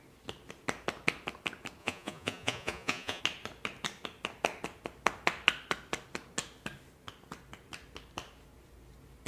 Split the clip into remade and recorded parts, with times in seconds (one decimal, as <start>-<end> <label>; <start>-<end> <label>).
0.0-1.8 recorded; 1.8-3.2 remade; 3.2-9.3 recorded